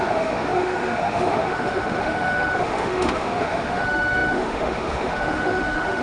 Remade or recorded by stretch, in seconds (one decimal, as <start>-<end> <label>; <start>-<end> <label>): 0.0-6.0 remade